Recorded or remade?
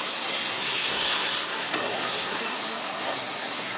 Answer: remade